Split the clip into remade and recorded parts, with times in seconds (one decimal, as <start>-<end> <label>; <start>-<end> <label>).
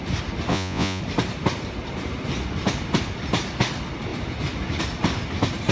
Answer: 0.0-0.5 recorded; 0.5-1.0 remade; 1.0-5.7 recorded